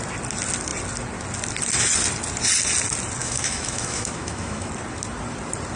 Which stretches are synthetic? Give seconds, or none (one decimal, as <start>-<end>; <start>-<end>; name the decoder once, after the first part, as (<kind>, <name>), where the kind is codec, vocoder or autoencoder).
3.2-4.7 (autoencoder, DAC-VAE)